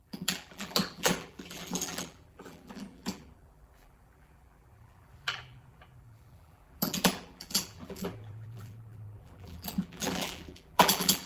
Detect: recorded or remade remade